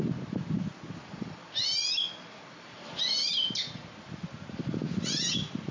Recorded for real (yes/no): yes